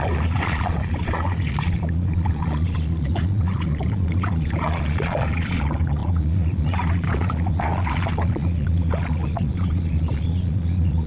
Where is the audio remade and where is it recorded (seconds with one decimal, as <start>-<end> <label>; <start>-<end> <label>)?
0.0-11.1 remade

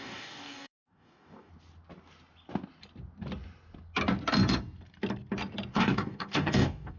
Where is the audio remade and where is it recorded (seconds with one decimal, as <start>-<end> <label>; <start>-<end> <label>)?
0.0-1.5 remade; 1.5-5.7 recorded; 5.7-7.0 remade

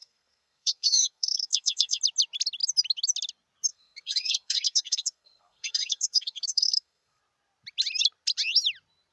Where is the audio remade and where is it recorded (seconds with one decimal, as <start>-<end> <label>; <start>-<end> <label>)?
0.0-2.0 remade; 2.0-3.7 recorded; 3.7-7.2 remade; 7.2-9.1 recorded

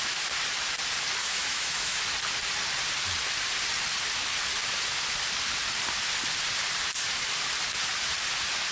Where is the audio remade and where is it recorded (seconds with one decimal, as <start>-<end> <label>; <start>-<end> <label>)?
0.0-1.2 recorded; 1.2-2.0 remade; 2.0-8.7 recorded

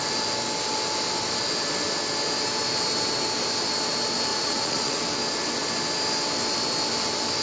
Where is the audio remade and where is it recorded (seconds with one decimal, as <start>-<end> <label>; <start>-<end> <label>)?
0.0-4.3 recorded; 4.3-5.0 remade; 5.0-7.4 recorded

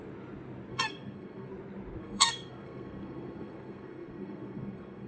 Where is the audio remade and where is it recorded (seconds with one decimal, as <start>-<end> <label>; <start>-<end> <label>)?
0.0-0.7 recorded; 0.7-1.5 remade; 1.5-2.0 recorded; 2.0-5.1 remade

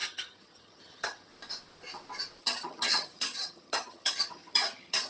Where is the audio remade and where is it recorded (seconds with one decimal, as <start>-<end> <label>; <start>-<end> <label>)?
0.0-1.3 remade; 1.3-2.4 recorded; 2.4-5.1 remade